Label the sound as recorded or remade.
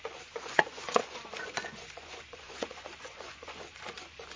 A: remade